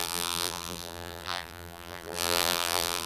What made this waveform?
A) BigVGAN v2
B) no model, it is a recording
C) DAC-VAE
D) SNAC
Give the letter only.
A